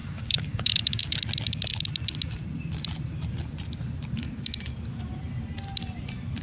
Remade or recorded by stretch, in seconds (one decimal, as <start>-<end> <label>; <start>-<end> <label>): 0.0-1.2 remade; 1.2-6.4 recorded